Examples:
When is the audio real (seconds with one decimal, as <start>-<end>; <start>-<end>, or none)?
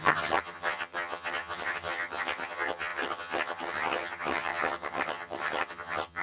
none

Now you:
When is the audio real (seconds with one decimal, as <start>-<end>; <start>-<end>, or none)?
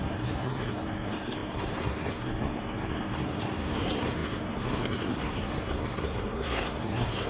none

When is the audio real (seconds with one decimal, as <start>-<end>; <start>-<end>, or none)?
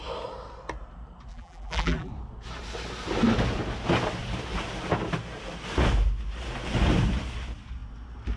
0.0-1.3; 2.1-8.4